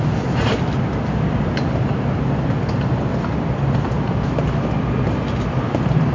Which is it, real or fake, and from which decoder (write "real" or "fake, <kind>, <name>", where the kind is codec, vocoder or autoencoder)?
real